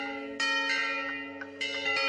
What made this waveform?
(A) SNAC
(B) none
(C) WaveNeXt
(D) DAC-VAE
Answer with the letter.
B